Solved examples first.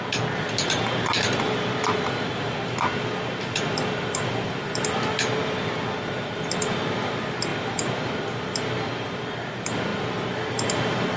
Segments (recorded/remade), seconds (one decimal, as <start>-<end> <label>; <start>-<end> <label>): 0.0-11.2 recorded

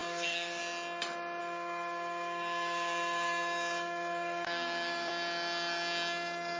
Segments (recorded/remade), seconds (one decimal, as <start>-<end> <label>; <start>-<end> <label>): 0.0-0.6 remade; 0.6-1.4 recorded; 1.4-5.1 remade; 5.1-6.6 recorded

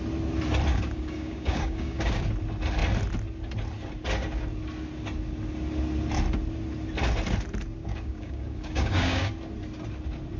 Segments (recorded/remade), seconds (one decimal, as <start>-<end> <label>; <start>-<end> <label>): 0.0-0.7 recorded; 0.7-2.2 remade; 2.2-7.8 recorded; 7.8-9.3 remade; 9.3-10.4 recorded

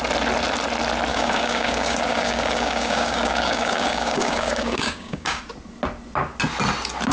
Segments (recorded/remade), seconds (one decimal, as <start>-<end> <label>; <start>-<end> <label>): 0.0-1.1 recorded; 1.1-5.4 remade; 5.4-7.1 recorded

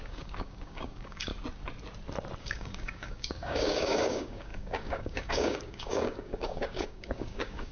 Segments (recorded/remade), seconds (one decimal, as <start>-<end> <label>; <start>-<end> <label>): 0.0-1.3 remade; 1.3-2.4 recorded; 2.4-7.7 remade